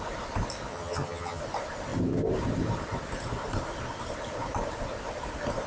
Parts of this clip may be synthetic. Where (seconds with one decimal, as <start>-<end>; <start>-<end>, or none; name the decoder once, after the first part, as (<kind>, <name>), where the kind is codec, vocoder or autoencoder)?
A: 0.7-1.4 (vocoder, HiFi-GAN)